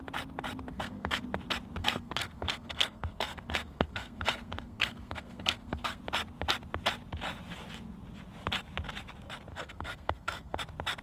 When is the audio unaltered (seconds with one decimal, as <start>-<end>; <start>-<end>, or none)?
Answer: 0.0-0.7; 1.2-1.8; 6.0-9.5; 10.6-11.0